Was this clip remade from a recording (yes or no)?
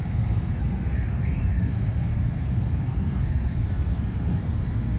yes